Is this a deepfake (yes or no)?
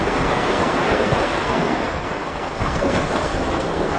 yes